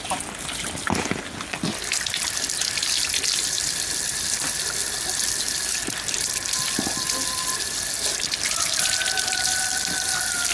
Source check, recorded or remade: recorded